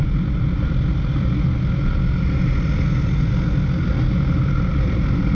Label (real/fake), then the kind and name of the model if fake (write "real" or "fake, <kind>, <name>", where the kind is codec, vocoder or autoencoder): real